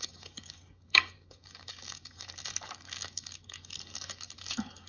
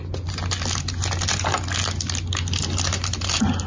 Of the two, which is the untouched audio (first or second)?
second